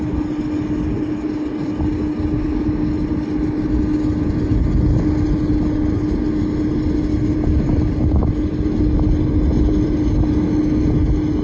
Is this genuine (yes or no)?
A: yes